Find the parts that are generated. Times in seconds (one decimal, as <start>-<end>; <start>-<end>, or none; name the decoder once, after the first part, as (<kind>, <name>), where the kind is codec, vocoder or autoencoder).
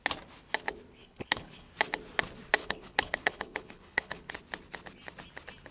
1.0-1.7 (codec, HILCodec); 2.6-4.3